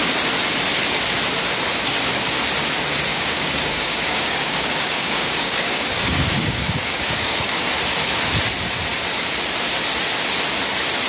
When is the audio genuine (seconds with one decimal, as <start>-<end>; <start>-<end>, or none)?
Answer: 0.0-3.1; 7.7-11.1